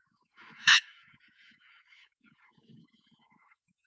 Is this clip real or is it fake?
fake